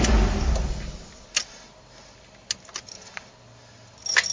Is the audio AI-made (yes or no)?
no